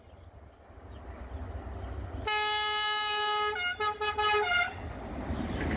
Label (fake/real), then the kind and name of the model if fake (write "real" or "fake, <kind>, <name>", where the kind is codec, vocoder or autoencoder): real